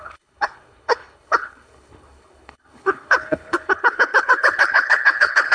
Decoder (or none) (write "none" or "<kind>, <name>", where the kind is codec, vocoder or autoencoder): codec, HILCodec